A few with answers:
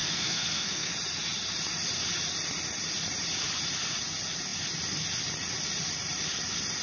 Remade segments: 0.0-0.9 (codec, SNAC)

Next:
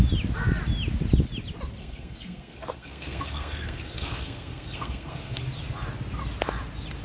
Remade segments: 1.8-5.4 (codec, SNAC)

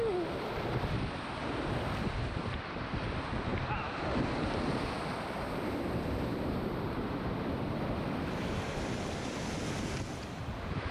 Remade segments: 3.5-7.3 (vocoder, BigVGAN v2)

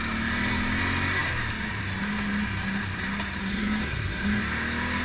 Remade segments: 3.4-4.4 (codec, SNAC)

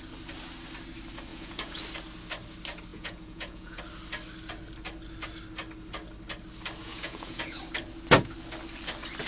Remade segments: 1.3-1.8 (vocoder, Vocos); 2.9-3.8; 6.8-7.6

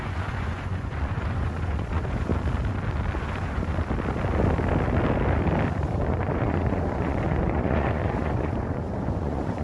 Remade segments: 0.0-2.3 (vocoder, Vocos); 3.2-3.7; 6.0-9.6

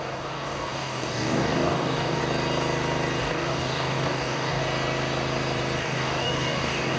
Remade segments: 0.0-2.2 (codec, DAC); 3.2-4.6; 5.8-7.0